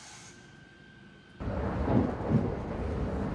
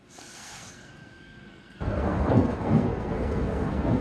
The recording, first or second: first